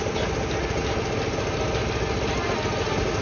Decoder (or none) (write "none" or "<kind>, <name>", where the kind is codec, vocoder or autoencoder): none